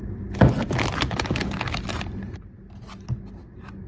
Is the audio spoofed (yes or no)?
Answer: no